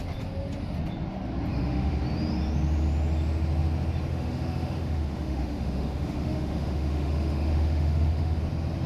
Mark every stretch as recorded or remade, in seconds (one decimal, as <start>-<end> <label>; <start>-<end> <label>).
0.0-1.5 recorded; 1.5-2.0 remade; 2.0-4.1 recorded; 4.1-8.4 remade; 8.4-8.9 recorded